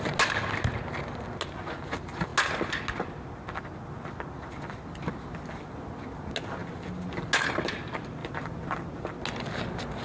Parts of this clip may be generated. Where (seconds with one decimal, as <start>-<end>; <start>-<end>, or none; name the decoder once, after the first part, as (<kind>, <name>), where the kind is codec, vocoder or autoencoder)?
8.2-9.1 (vocoder, BigVGAN v2)